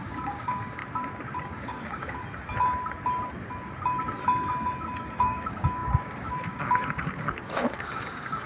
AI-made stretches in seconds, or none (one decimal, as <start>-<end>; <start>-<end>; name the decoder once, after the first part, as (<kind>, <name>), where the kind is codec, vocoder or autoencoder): 0.0-0.8 (codec, DAC); 1.4-2.2; 5.0-8.5